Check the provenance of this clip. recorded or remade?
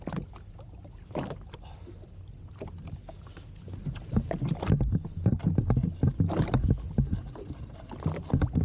recorded